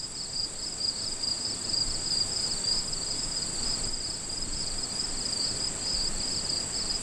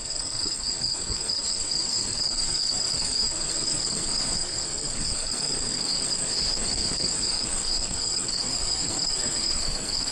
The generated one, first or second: second